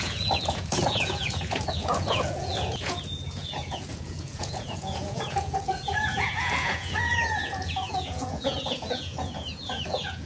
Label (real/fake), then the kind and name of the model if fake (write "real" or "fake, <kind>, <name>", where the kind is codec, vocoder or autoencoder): fake, vocoder, Vocos